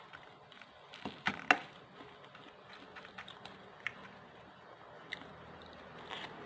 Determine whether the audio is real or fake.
real